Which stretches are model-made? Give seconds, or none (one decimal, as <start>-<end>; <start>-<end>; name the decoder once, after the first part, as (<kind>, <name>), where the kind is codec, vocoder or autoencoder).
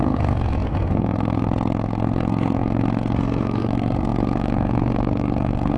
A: 0.0-5.8 (codec, SNAC)